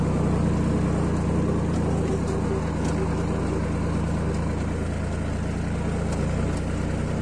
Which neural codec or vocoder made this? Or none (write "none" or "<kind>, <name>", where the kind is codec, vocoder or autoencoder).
none